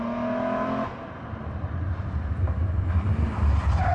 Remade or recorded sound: recorded